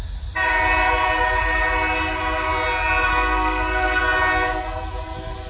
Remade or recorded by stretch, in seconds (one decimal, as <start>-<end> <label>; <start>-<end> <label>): 0.0-3.0 recorded; 3.0-4.0 remade; 4.0-5.5 recorded